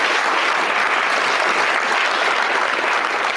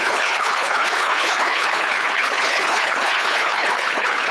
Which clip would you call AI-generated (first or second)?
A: second